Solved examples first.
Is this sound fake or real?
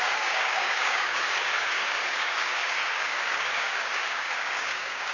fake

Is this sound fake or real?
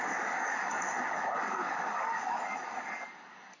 fake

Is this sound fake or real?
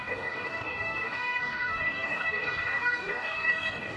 fake